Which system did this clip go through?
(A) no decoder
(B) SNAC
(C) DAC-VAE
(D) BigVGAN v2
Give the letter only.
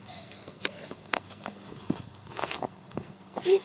B